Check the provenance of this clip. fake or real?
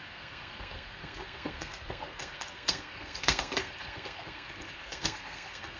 fake